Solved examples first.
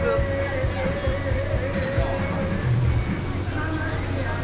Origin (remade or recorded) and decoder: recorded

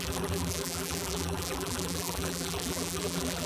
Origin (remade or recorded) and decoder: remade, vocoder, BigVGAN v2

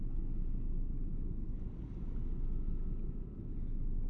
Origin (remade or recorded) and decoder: recorded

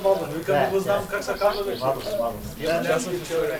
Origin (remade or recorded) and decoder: recorded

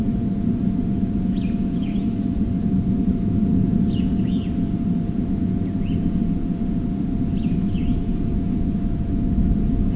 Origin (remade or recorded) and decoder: remade, vocoder, Vocos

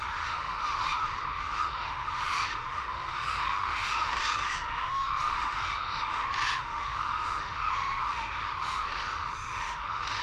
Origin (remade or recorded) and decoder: remade, autoencoder, DAC-VAE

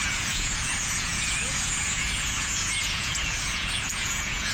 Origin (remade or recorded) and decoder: remade, vocoder, Vocos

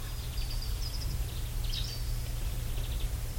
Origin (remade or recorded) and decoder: recorded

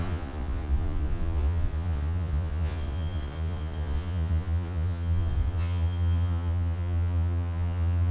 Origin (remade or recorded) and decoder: remade, vocoder, Vocos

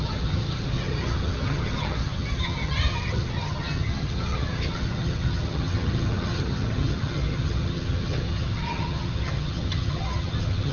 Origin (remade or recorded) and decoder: remade, vocoder, HiFi-GAN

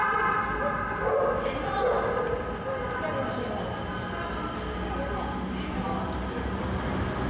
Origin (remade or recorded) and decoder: recorded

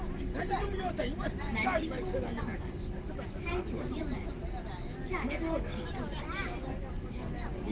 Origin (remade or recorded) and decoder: recorded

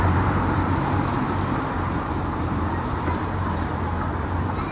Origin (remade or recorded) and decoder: remade, vocoder, BigVGAN v2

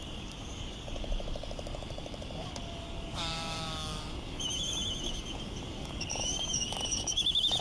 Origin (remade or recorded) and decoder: remade, codec, DAC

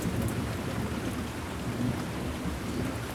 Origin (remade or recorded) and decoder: recorded